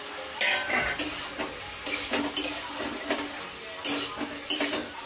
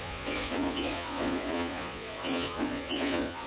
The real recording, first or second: first